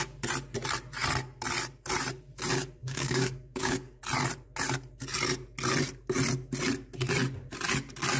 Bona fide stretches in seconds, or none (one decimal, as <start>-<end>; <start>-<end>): 0.0-2.8; 4.0-8.2